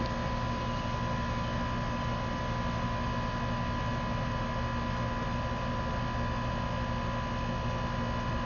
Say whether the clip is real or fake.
real